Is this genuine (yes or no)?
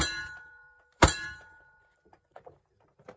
no